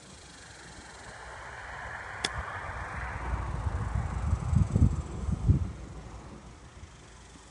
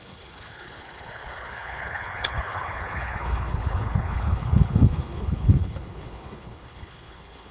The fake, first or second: second